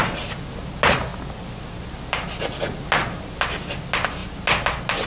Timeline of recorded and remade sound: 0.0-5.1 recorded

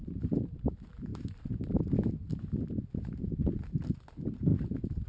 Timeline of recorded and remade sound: 0.0-5.1 recorded

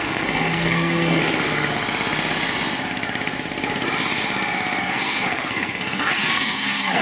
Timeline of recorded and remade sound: 0.0-1.2 remade; 1.2-4.8 recorded; 4.8-7.0 remade

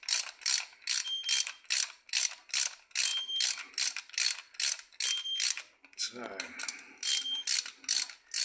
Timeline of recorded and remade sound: 0.0-8.4 recorded

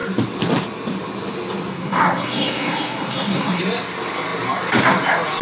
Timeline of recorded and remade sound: 0.0-1.7 recorded; 1.7-3.6 remade; 3.6-5.4 recorded